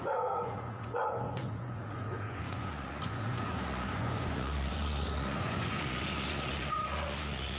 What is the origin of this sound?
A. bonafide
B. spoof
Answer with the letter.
B